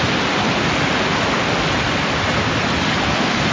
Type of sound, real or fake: real